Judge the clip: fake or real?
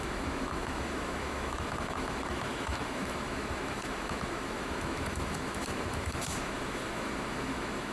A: fake